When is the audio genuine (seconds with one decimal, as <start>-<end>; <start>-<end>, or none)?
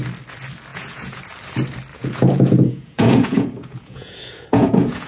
0.0-0.7; 1.2-1.9